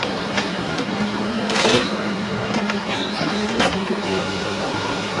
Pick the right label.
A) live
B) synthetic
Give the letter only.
B